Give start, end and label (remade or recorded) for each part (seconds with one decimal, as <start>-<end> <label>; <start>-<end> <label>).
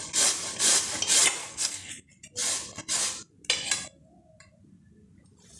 0.0-1.4 recorded; 1.4-1.9 remade; 1.9-5.6 recorded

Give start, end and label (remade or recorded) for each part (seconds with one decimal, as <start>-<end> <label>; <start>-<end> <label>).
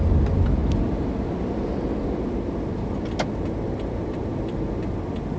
0.0-5.4 recorded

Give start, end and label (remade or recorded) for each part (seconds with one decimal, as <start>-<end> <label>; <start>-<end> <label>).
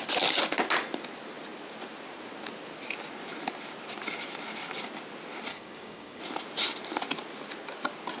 0.0-5.5 recorded; 5.5-6.2 remade; 6.2-8.2 recorded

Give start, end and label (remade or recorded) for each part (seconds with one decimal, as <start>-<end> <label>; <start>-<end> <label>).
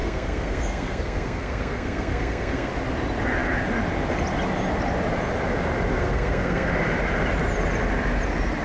0.0-2.7 remade; 2.7-5.9 recorded; 5.9-6.7 remade; 6.7-8.6 recorded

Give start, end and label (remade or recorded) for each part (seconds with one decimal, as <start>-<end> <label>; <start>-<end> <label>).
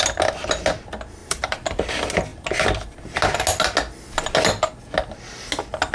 0.0-1.2 recorded; 1.2-1.9 remade; 1.9-5.9 recorded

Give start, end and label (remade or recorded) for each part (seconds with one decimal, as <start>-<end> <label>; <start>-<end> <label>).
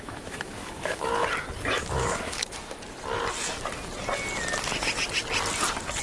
0.0-1.1 remade; 1.1-1.8 recorded; 1.8-2.4 remade; 2.4-6.0 recorded